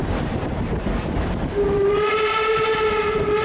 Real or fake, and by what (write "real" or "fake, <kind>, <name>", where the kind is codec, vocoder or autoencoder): real